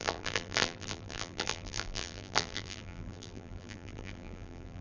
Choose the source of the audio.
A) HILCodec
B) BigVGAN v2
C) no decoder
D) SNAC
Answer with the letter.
B